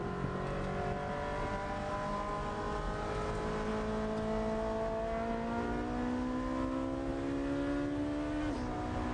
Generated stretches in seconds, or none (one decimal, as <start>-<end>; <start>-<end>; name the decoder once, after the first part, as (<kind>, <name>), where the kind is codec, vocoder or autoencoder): none